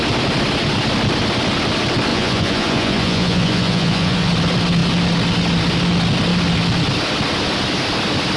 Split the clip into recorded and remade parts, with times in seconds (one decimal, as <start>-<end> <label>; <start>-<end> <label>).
0.0-2.1 recorded; 2.1-4.3 remade; 4.3-8.4 recorded